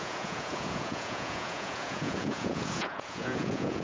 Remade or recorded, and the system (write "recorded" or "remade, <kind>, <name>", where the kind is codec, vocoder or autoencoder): remade, vocoder, Vocos